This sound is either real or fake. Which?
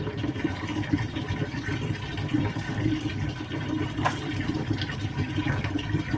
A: fake